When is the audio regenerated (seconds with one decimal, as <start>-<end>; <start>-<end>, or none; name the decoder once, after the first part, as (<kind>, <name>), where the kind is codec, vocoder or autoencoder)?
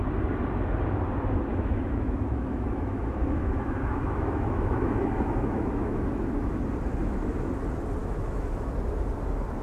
1.5-6.6 (autoencoder, DAC-VAE); 7.0-7.5; 8.0-8.7